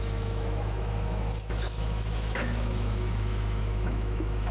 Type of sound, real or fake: fake